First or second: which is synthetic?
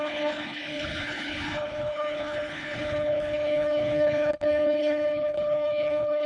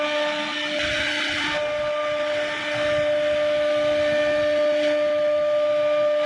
first